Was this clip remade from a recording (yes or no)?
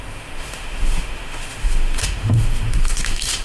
yes